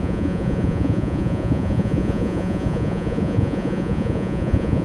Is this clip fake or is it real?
fake